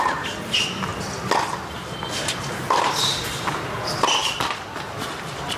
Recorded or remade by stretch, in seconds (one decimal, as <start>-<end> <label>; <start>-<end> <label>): 0.0-4.2 recorded; 4.2-5.6 remade